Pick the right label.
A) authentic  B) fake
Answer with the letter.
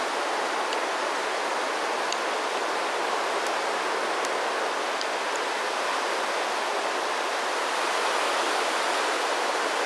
A